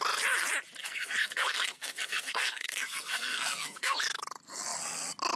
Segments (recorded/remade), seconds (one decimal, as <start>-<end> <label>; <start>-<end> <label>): 0.0-0.8 recorded; 0.8-4.0 remade; 4.0-5.4 recorded